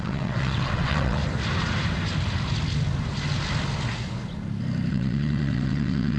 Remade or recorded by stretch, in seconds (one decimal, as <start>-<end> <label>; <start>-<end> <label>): 0.0-1.2 remade; 1.2-4.9 recorded; 4.9-6.2 remade